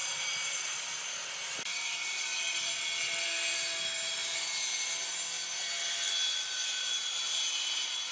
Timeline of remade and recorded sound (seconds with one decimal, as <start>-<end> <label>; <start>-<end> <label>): 0.0-0.7 remade; 0.7-1.7 recorded; 1.7-2.2 remade; 2.2-8.1 recorded